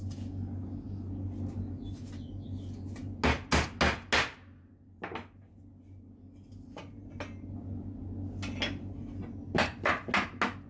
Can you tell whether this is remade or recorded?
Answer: recorded